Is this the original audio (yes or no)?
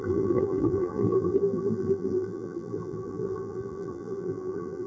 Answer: no